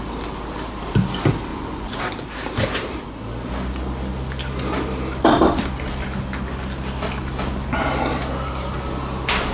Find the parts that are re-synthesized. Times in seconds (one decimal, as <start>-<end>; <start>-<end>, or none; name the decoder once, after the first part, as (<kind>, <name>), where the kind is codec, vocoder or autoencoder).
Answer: 1.5-2.0 (vocoder, Vocos)